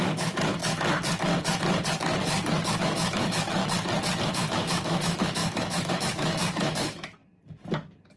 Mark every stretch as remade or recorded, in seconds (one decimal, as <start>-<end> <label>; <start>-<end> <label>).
0.0-0.6 remade; 0.6-2.8 recorded; 2.8-3.6 remade; 3.6-4.2 recorded; 4.2-7.2 remade; 7.2-8.2 recorded